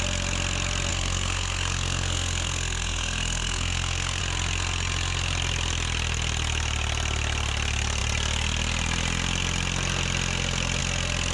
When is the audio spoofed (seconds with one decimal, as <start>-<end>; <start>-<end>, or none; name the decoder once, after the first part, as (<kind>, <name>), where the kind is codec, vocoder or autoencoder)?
0.9-4.2 (codec, SNAC)